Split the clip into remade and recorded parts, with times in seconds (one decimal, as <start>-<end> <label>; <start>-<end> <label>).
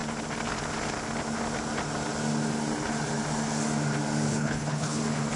0.0-4.3 recorded; 4.3-5.0 remade; 5.0-5.4 recorded